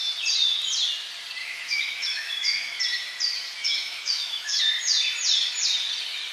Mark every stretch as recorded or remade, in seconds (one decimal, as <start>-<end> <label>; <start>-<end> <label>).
0.0-1.4 recorded; 1.4-2.8 remade; 2.8-3.6 recorded; 3.6-4.6 remade; 4.6-6.3 recorded